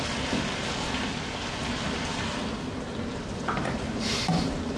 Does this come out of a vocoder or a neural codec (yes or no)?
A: yes